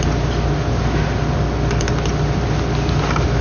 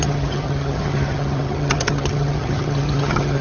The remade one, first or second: second